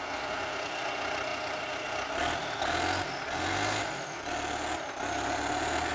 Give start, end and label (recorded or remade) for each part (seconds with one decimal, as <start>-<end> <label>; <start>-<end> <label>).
0.0-5.9 recorded